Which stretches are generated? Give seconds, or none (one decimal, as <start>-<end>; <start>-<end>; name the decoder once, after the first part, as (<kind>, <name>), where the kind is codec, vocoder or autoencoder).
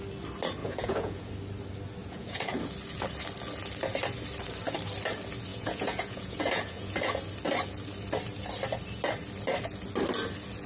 0.6-1.3 (vocoder, Vocos); 2.0-2.6; 5.5-7.2